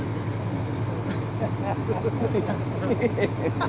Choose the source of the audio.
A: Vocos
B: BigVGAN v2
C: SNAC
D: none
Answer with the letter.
D